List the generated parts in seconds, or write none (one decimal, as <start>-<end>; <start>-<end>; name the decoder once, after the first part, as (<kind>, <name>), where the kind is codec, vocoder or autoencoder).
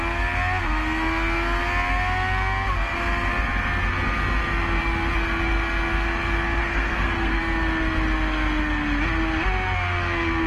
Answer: 6.6-7.4 (codec, SNAC)